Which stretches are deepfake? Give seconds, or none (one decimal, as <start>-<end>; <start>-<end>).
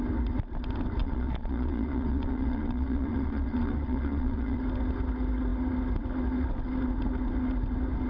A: 1.0-4.6